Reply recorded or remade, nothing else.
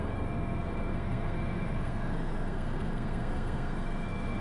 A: remade